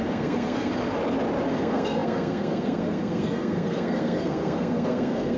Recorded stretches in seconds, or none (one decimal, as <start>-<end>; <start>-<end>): 0.7-1.5

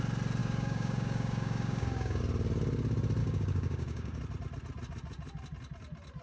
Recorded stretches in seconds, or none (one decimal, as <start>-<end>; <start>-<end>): 0.0-0.4; 2.2-3.2; 4.2-6.2

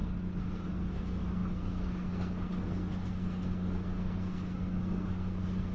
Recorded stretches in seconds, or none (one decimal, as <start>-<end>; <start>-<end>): none

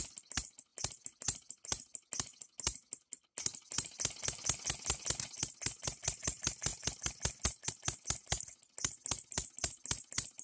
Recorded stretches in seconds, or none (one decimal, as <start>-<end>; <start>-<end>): 0.0-10.4